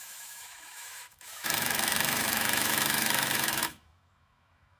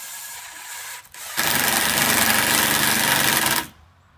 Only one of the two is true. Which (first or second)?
second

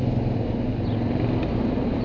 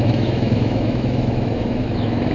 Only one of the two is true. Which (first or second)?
first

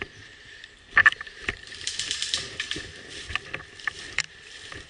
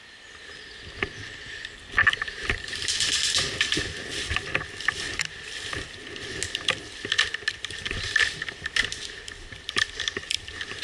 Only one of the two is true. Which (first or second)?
second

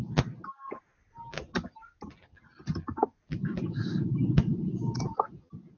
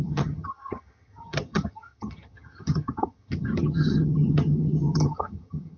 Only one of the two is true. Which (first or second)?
first